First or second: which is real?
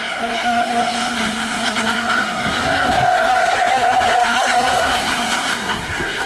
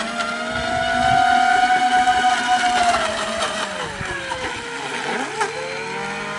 second